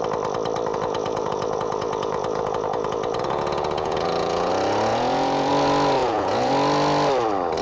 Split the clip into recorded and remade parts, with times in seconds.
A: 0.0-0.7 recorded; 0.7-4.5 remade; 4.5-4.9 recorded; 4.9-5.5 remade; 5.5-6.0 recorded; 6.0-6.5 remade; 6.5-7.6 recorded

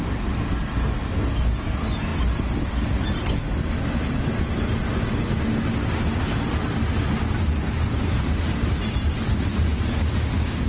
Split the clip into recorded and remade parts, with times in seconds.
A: 0.0-10.7 recorded

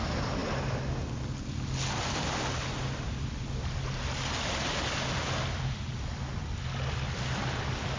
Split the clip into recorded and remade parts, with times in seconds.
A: 0.0-8.0 recorded

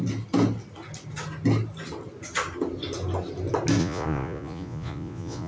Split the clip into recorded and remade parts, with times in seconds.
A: 0.0-3.8 recorded; 3.8-5.5 remade